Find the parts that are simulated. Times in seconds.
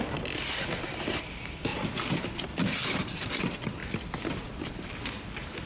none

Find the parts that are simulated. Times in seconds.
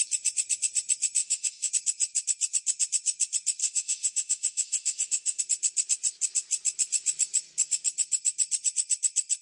1.2-1.7 (autoencoder, DAC-VAE); 3.6-5.4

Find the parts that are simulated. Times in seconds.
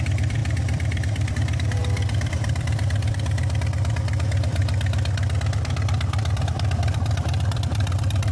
0.0-4.6 (vocoder, BigVGAN v2); 5.4-8.3